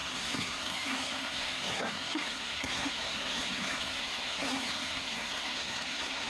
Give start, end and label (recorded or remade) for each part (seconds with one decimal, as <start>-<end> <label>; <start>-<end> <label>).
0.0-6.3 remade